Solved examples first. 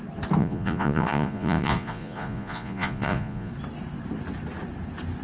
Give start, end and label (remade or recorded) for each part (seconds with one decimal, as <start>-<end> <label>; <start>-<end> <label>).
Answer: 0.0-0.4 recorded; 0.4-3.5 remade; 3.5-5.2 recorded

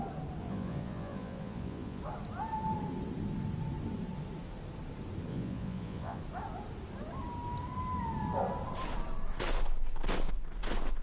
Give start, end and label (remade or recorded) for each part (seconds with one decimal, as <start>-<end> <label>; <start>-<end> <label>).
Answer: 0.0-0.4 recorded; 0.4-2.0 remade; 2.0-5.3 recorded; 5.3-6.2 remade; 6.2-11.0 recorded

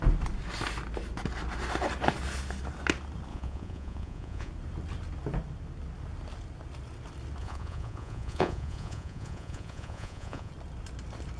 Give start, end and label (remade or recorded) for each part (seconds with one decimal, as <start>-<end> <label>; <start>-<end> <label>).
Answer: 0.0-3.3 recorded; 3.3-4.5 remade; 4.5-7.4 recorded; 7.4-10.5 remade; 10.5-11.4 recorded

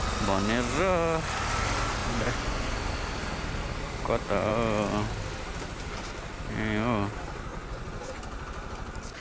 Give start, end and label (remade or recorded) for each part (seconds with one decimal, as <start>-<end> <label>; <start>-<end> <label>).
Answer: 0.0-2.0 recorded; 2.0-2.7 remade; 2.7-7.5 recorded; 7.5-8.2 remade; 8.2-9.2 recorded

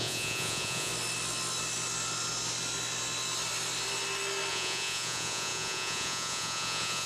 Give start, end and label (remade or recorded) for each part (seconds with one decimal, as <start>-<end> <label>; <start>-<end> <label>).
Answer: 0.0-0.9 remade; 0.9-4.5 recorded; 4.5-7.1 remade

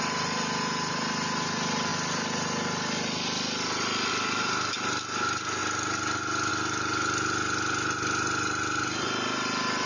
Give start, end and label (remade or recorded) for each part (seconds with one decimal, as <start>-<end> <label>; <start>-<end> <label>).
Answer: 0.0-9.9 recorded

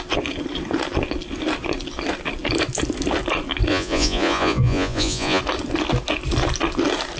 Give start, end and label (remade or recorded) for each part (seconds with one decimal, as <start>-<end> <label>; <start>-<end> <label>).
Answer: 0.0-3.7 recorded; 3.7-5.4 remade; 5.4-7.2 recorded

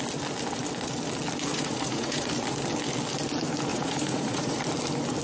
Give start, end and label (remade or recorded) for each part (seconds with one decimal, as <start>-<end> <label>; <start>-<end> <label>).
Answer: 0.0-1.5 recorded; 1.5-2.3 remade; 2.3-3.7 recorded; 3.7-4.6 remade; 4.6-5.2 recorded